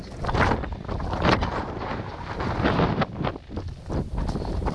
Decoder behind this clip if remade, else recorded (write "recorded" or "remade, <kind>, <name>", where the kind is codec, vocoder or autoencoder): recorded